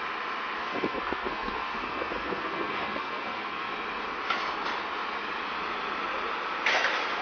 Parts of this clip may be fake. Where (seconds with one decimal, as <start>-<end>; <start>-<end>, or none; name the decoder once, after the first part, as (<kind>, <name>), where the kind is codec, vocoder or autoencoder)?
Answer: 0.6-3.7 (codec, SNAC)

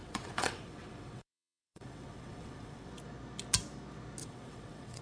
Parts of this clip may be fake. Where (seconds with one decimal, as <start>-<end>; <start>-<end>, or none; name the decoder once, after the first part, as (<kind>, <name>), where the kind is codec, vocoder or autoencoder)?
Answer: 0.0-2.9 (vocoder, WaveNeXt); 4.2-5.0

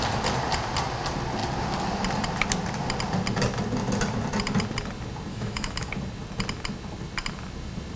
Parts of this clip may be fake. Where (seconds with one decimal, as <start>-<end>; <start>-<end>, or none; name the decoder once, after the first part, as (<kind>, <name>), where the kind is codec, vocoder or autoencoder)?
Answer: 5.3-5.9 (autoencoder, DAC-VAE)

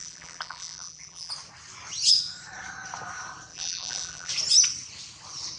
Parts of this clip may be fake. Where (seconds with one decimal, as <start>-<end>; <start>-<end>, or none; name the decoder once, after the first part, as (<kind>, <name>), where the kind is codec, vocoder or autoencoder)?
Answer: 0.0-1.3 (vocoder, BigVGAN v2); 3.5-4.3

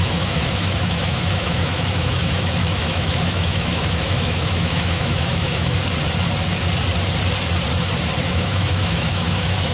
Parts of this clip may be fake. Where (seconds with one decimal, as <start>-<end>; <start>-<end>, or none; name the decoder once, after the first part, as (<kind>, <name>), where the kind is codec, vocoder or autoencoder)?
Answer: 0.0-5.8 (autoencoder, DAC-VAE); 8.2-9.7

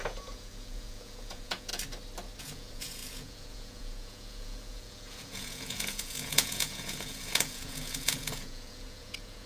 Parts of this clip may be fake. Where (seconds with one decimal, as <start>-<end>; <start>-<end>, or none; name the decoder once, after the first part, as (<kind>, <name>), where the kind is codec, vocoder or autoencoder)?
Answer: 0.0-1.7 (vocoder, Vocos); 2.4-9.5

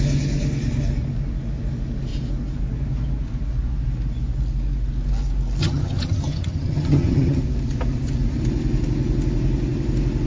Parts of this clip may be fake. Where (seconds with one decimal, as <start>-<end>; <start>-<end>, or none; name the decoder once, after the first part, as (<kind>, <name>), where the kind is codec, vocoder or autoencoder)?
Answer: 5.6-7.4 (vocoder, HiFi-GAN)